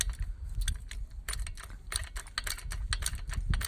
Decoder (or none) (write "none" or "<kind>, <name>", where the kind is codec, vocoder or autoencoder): none